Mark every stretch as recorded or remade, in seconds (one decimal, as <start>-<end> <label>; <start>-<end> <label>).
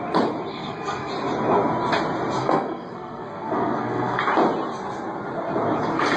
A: 0.0-0.5 recorded; 0.5-1.1 remade; 1.1-2.4 recorded; 2.4-4.2 remade; 4.2-6.2 recorded